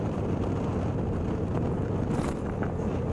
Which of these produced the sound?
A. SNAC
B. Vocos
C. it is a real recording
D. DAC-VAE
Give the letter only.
C